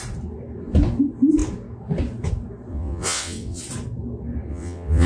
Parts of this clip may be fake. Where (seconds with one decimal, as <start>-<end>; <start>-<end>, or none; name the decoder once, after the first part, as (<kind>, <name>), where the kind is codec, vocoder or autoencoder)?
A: 2.7-3.6 (vocoder, WaveNeXt); 4.5-5.1